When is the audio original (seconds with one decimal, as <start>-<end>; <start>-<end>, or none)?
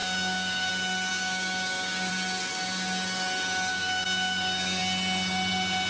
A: 0.7-1.1; 2.1-3.7; 4.8-5.9